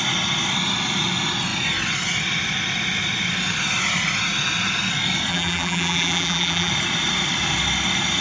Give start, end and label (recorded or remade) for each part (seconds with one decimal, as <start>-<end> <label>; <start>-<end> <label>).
0.0-5.3 recorded; 5.3-6.7 remade; 6.7-8.2 recorded